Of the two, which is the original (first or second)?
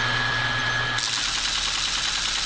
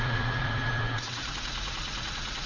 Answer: first